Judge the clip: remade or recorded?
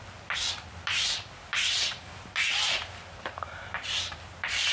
remade